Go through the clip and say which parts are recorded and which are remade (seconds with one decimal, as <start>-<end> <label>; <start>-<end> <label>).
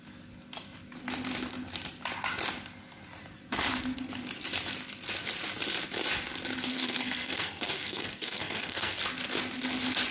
0.0-6.7 recorded; 6.7-9.0 remade; 9.0-10.1 recorded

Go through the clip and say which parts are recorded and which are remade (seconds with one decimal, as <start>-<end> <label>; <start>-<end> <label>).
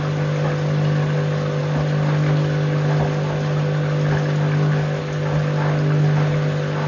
0.0-6.9 recorded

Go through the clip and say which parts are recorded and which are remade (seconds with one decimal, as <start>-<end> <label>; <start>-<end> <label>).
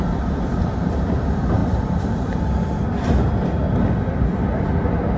0.0-0.5 recorded; 0.5-1.2 remade; 1.2-1.6 recorded; 1.6-2.4 remade; 2.4-5.2 recorded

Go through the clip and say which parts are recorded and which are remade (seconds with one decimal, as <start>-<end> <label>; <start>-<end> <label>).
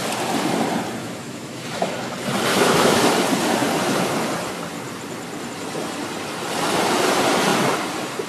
0.0-1.0 recorded; 1.0-1.9 remade; 1.9-2.5 recorded; 2.5-3.0 remade; 3.0-8.3 recorded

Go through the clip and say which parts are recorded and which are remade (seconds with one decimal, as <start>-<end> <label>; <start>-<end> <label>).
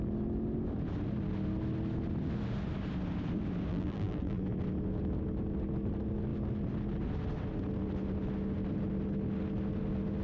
0.0-3.7 recorded; 3.7-4.4 remade; 4.4-10.2 recorded